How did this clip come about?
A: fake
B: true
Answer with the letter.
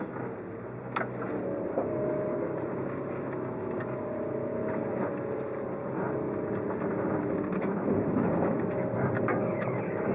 B